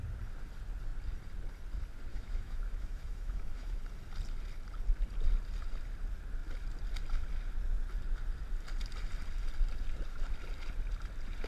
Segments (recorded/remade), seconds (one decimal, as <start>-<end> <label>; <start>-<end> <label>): 0.0-2.1 recorded; 2.1-3.8 remade; 3.8-11.5 recorded